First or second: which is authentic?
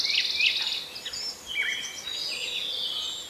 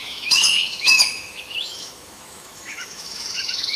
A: first